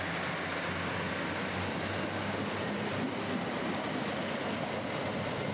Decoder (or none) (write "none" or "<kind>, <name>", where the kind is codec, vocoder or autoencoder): none